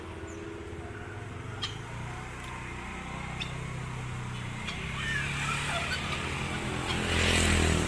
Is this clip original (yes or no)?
yes